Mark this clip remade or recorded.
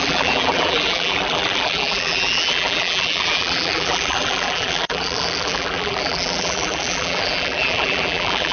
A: remade